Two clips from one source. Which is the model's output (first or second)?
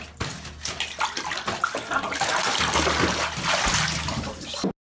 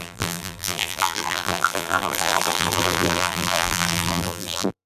second